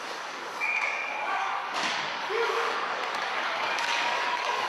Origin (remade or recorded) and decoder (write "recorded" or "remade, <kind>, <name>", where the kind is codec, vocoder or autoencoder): remade, codec, DAC